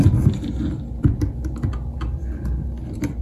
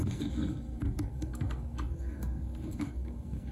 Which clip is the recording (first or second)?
first